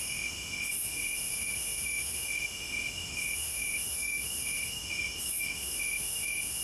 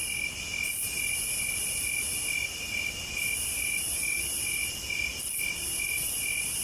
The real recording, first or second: second